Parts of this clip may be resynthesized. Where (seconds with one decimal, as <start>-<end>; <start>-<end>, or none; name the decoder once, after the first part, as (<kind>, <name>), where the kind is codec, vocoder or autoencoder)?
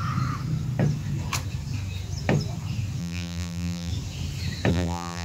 3.0-3.9 (vocoder, BigVGAN v2); 4.7-5.2